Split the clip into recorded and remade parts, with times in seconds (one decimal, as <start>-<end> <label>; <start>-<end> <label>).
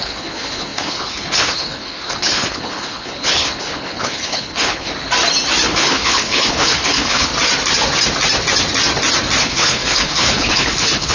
0.0-4.9 remade; 4.9-5.7 recorded; 5.7-7.3 remade; 7.3-9.4 recorded; 9.4-11.1 remade